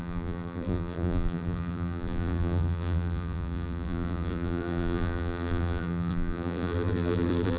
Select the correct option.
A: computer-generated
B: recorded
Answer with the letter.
A